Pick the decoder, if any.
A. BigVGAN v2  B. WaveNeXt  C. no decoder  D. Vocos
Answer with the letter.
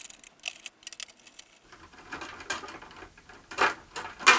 C